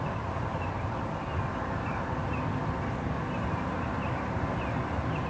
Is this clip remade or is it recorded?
recorded